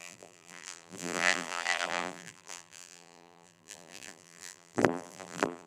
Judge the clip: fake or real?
fake